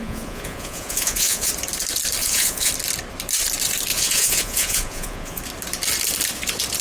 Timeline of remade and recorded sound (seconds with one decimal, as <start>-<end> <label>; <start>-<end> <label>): 0.0-1.5 remade; 1.5-2.2 recorded; 2.2-2.7 remade; 2.7-3.9 recorded; 3.9-5.4 remade; 5.4-6.8 recorded